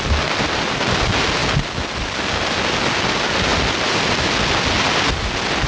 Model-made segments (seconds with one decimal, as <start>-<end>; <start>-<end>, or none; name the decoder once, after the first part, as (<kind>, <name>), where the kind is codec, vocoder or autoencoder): none